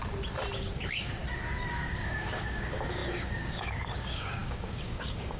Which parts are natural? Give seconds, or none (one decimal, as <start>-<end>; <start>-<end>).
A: 0.0-0.6; 1.2-1.8